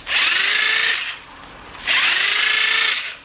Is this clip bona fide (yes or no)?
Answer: yes